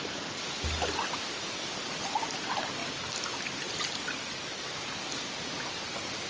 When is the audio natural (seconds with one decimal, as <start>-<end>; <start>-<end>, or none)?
0.0-6.3

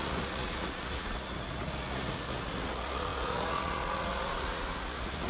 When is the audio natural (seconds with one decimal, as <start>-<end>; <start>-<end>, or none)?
none